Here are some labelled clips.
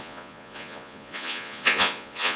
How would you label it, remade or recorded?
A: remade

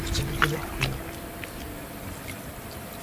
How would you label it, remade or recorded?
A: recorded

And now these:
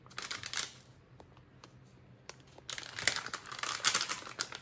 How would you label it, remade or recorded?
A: recorded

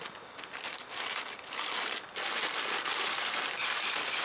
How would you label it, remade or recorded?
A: recorded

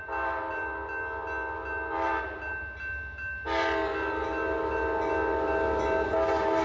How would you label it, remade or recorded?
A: recorded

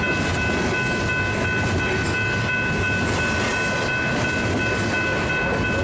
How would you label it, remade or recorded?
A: recorded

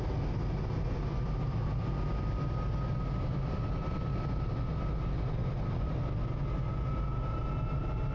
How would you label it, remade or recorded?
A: recorded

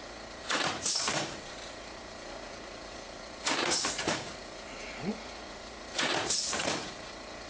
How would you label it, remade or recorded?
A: remade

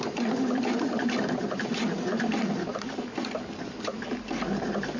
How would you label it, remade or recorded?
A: recorded